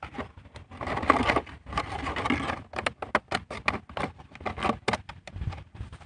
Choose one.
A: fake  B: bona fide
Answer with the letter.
B